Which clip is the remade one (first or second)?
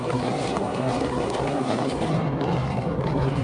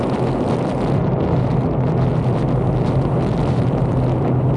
first